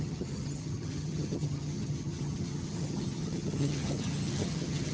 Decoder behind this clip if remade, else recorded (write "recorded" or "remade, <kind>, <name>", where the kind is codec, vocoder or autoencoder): remade, vocoder, HiFi-GAN